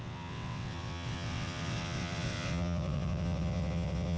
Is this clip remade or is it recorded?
remade